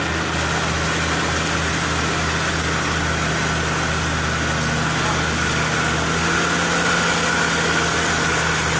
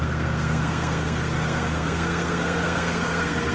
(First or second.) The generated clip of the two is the second